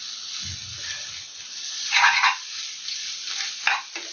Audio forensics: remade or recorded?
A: recorded